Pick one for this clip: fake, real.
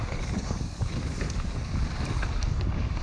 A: fake